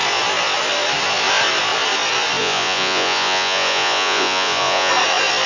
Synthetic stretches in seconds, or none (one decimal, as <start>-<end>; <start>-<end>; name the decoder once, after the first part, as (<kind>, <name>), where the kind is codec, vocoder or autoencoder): 2.4-4.9 (vocoder, Vocos)

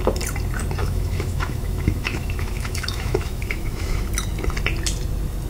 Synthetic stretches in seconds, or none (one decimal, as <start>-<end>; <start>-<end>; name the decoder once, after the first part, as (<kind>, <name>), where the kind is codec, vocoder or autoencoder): 0.8-4.1 (autoencoder, DAC-VAE)

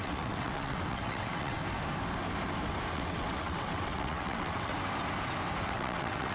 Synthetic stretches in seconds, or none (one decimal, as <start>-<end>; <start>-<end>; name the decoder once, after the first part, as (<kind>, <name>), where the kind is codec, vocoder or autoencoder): 0.0-1.6 (vocoder, WaveNeXt); 2.9-4.7; 5.6-6.3

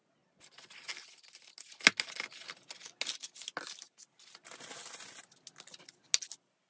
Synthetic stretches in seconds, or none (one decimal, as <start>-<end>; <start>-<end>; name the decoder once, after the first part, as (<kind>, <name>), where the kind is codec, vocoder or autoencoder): none

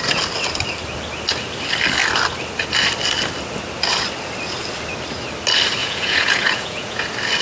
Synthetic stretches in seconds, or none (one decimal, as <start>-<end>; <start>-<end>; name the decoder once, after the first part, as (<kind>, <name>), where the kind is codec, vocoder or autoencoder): 5.8-7.0 (vocoder, Vocos)